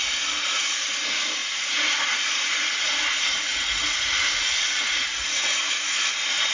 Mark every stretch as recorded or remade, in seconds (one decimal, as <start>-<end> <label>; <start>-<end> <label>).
0.0-0.5 recorded; 0.5-6.5 remade